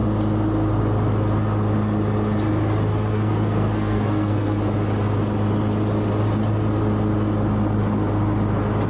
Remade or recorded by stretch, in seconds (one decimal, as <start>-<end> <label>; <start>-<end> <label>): 0.0-2.9 recorded; 2.9-4.6 remade; 4.6-8.9 recorded